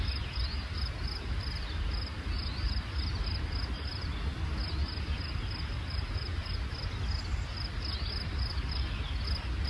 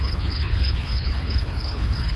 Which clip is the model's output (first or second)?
second